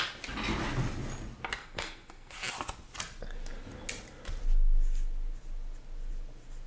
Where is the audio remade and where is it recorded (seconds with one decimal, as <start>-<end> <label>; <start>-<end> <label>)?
0.0-1.6 recorded; 1.6-2.3 remade; 2.3-6.7 recorded